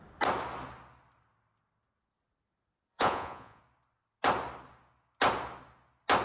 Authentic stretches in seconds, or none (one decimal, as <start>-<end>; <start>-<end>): 0.0-2.9; 3.6-6.2